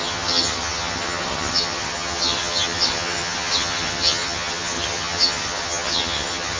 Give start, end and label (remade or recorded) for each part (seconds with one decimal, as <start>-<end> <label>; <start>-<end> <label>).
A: 0.0-6.6 remade